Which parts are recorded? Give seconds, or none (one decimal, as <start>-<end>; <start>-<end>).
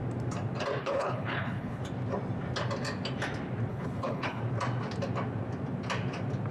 0.0-0.8; 1.8-3.7; 4.4-6.5